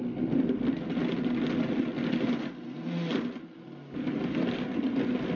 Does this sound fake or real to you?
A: real